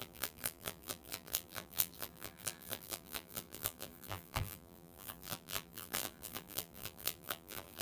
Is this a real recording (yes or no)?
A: no